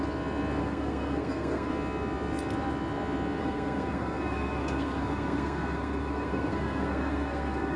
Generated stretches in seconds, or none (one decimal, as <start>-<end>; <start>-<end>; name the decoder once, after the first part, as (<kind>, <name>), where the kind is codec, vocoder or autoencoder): 0.6-1.7 (codec, SNAC); 3.4-7.8